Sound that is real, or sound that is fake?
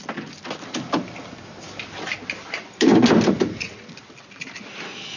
real